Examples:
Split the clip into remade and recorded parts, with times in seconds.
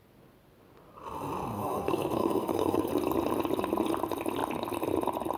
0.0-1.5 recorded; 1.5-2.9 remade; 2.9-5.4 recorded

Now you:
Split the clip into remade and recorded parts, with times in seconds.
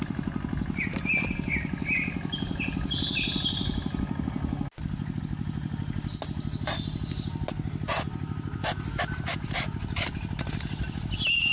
0.0-11.5 recorded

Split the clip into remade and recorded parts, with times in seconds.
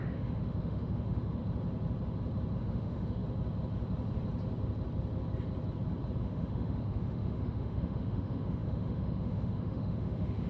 0.0-1.4 remade; 1.4-2.6 recorded; 2.6-3.2 remade; 3.2-6.2 recorded; 6.2-10.5 remade